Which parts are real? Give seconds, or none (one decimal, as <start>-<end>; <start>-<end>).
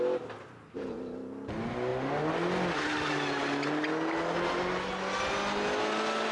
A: 0.0-6.3